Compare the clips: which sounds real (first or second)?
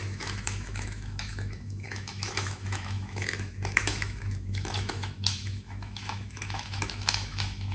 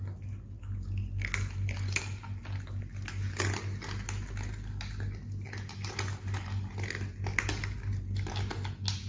second